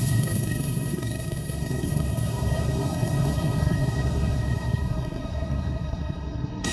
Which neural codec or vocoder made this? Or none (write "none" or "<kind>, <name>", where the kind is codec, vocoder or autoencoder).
codec, SNAC